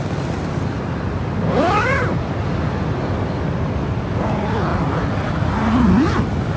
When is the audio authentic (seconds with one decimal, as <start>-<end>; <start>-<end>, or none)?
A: 0.0-6.6